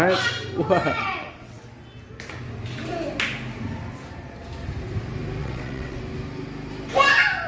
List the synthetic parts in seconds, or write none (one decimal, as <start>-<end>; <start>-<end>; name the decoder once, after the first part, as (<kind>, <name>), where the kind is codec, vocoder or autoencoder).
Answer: 0.8-1.6 (vocoder, WaveNeXt); 5.4-6.0